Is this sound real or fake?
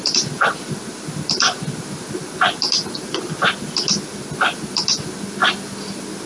real